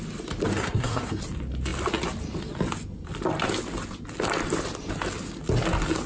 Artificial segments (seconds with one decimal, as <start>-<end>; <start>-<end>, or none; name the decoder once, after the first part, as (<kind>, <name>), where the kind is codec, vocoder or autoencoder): 0.5-1.2 (codec, SNAC)